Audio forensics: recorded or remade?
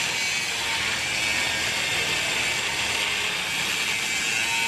recorded